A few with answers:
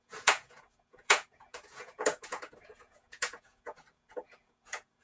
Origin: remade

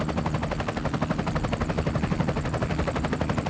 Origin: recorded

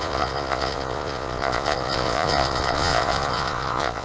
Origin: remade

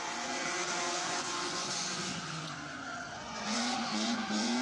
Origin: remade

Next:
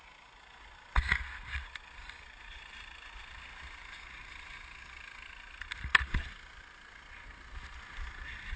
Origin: recorded